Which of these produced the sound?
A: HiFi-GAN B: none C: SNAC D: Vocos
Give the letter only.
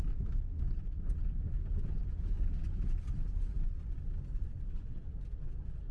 B